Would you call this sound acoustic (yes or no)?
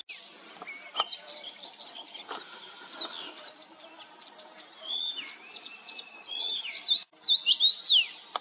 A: yes